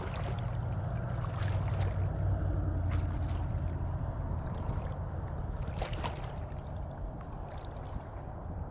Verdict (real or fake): real